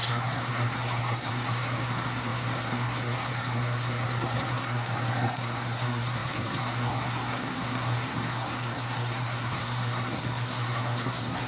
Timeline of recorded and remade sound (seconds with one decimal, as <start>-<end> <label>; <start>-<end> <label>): 0.0-11.5 remade